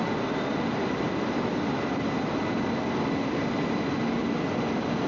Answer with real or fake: real